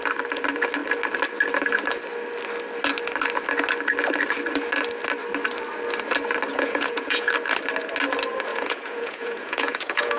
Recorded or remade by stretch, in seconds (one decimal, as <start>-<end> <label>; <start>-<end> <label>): 0.0-6.5 recorded; 6.5-7.3 remade; 7.3-8.5 recorded; 8.5-10.2 remade